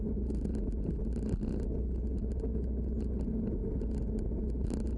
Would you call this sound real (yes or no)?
yes